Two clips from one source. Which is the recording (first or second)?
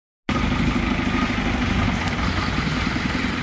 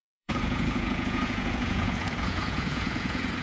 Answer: first